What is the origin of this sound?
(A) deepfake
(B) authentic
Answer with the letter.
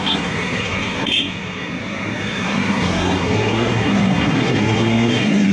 A